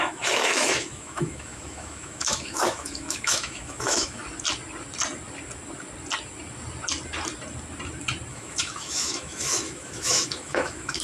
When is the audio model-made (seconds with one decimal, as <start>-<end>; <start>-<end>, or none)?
0.0-4.2; 8.3-11.0